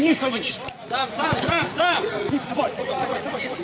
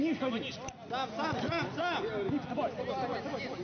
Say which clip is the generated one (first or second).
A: first